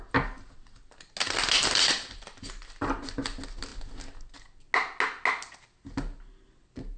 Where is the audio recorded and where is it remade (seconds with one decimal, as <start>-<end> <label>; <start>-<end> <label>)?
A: 0.0-7.0 recorded